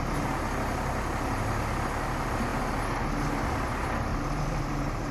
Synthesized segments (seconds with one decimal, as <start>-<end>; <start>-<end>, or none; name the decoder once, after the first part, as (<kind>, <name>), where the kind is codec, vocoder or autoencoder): 4.1-5.1 (vocoder, BigVGAN v2)